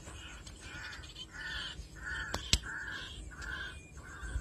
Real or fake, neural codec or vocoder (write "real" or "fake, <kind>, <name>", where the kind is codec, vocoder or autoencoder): real